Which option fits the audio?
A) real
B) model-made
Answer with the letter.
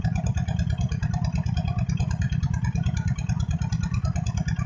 A